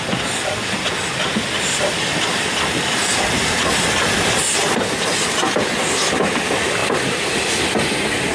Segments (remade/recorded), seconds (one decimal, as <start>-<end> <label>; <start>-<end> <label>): 0.0-8.3 recorded